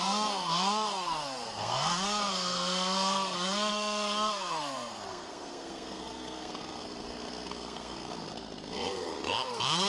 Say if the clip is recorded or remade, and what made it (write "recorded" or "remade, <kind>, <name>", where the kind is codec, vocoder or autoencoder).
remade, codec, SNAC